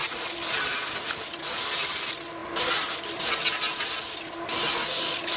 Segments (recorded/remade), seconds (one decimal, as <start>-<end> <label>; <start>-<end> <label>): 0.0-5.4 recorded